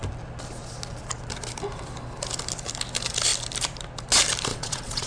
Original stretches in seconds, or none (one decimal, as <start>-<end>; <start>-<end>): 0.0-4.5

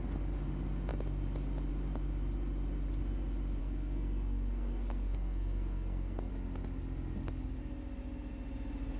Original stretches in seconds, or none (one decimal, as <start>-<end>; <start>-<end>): 0.0-3.6; 6.3-9.0

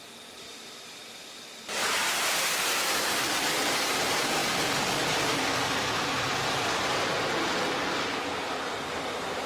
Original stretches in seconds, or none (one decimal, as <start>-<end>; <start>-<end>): 7.1-8.0

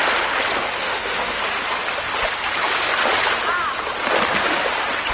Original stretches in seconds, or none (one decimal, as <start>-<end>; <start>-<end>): 0.0-0.8; 1.4-5.1

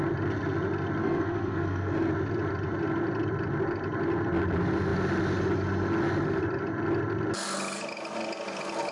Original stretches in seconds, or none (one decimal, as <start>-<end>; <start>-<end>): 0.0-1.0; 2.1-8.9

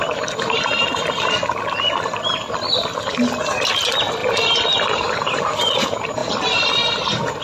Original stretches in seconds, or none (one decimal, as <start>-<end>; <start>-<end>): 0.0-4.2; 5.4-6.2